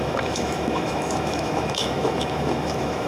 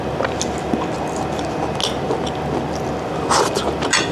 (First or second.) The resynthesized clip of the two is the first